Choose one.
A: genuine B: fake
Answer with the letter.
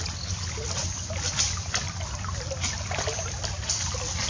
A